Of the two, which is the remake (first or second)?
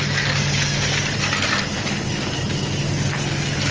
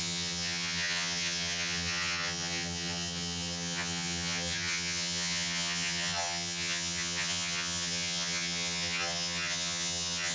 second